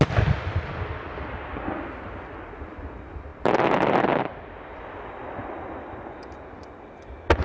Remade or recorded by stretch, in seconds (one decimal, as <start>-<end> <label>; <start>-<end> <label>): 0.0-7.4 recorded